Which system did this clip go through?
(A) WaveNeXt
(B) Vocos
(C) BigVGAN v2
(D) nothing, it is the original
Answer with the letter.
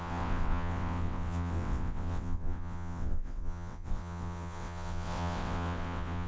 A